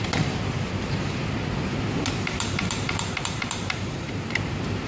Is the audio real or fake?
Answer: fake